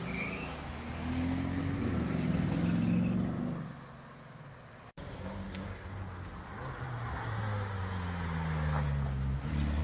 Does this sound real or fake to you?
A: real